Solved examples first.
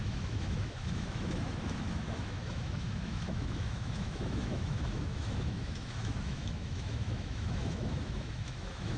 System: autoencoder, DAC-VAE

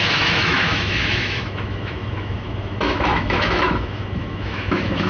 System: autoencoder, DAC-VAE